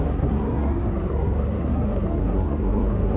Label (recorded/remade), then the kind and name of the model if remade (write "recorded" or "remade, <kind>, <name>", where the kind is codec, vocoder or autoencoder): remade, codec, SNAC